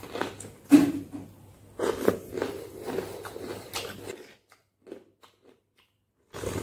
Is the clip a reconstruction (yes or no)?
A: no